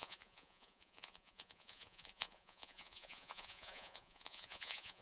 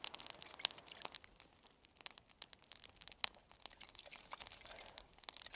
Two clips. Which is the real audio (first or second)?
second